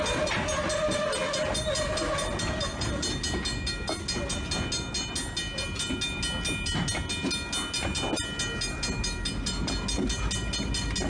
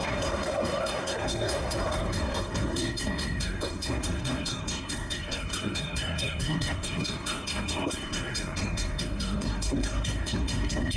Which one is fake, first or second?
second